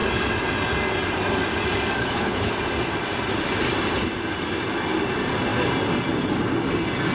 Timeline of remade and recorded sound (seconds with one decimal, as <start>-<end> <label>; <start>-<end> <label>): 0.0-2.0 recorded; 2.0-2.5 remade; 2.5-7.1 recorded